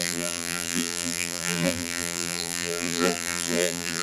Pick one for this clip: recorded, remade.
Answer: remade